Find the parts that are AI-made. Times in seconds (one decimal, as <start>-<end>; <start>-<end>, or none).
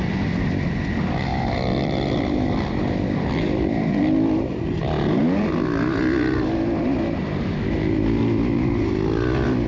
1.3-3.9